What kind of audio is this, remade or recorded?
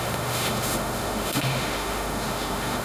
remade